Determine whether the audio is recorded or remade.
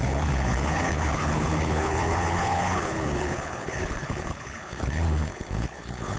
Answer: remade